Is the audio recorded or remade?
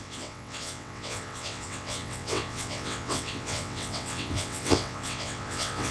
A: remade